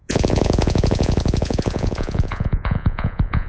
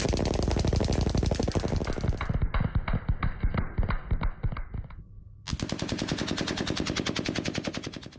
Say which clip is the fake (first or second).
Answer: first